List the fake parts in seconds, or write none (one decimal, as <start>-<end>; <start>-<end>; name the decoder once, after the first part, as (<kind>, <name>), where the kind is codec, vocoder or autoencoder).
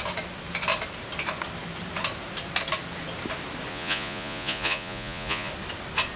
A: 3.7-5.5 (vocoder, Vocos)